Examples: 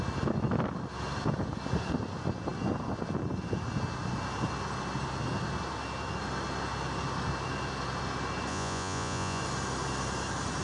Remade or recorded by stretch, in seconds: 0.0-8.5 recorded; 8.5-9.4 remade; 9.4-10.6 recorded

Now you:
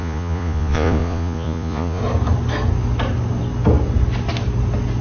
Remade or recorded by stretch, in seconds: 0.0-2.0 remade; 2.0-5.0 recorded

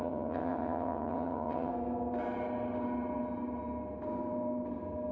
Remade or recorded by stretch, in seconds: 0.0-1.7 remade; 1.7-5.1 recorded

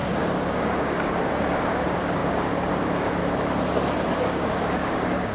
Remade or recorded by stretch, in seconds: 0.0-3.2 remade; 3.2-4.1 recorded; 4.1-5.3 remade

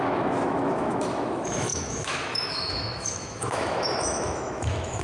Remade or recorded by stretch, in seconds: 0.0-5.0 remade

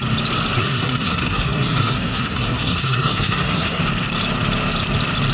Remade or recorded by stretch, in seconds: 0.0-0.6 recorded; 0.6-3.8 remade; 3.8-5.3 recorded

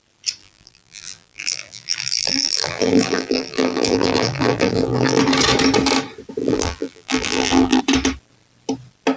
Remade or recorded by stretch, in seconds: 0.0-0.4 recorded; 0.4-5.2 remade; 5.2-6.4 recorded; 6.4-7.8 remade; 7.8-9.2 recorded